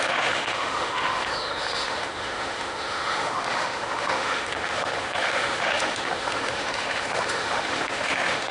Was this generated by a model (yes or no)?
yes